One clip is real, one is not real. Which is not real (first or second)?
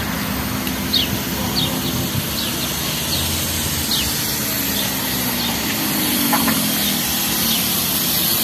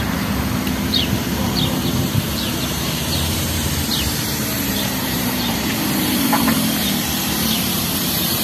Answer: second